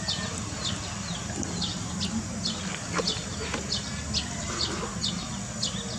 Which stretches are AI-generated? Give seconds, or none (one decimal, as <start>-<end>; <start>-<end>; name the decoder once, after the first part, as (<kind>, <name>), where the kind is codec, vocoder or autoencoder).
none